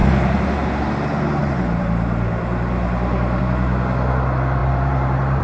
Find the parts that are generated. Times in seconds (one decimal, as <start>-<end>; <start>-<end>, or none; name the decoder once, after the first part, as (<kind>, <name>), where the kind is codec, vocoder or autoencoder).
0.0-0.9 (vocoder, BigVGAN v2); 1.4-3.4; 4.6-5.4